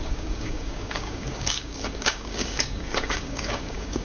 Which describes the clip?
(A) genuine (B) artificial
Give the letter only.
B